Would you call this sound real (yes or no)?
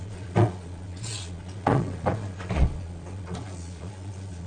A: no